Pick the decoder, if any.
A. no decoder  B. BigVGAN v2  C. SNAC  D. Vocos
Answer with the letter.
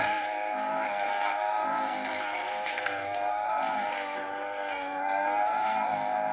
C